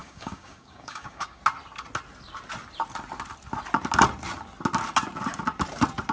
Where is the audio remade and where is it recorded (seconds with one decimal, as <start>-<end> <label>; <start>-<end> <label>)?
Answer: 0.0-1.4 remade; 1.4-6.1 recorded